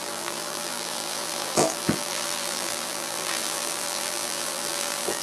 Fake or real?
fake